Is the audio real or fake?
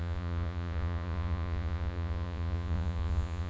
fake